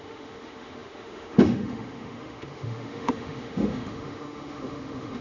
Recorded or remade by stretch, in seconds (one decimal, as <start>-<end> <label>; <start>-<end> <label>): 0.0-5.2 remade